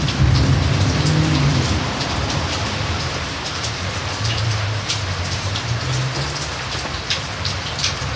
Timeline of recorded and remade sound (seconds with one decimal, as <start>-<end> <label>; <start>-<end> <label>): 0.0-1.5 recorded; 1.5-6.1 remade; 6.1-8.2 recorded